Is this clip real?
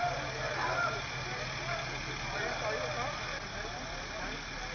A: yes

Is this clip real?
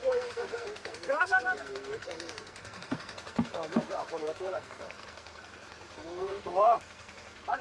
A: no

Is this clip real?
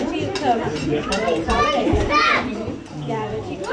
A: yes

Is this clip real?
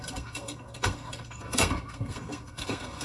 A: no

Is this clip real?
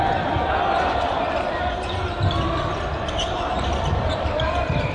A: yes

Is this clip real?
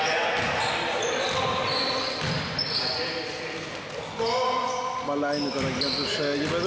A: yes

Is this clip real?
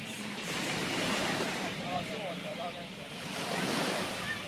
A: no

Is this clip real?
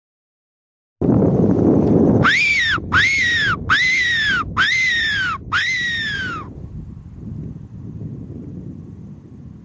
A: yes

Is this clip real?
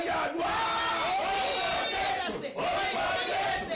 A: yes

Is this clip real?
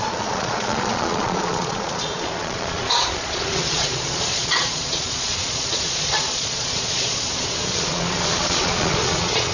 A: no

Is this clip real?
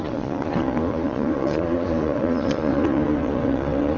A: no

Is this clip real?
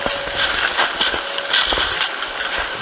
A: yes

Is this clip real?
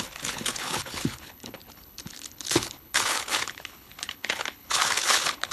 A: no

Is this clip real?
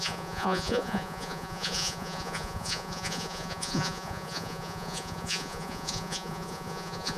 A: no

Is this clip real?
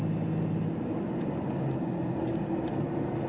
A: yes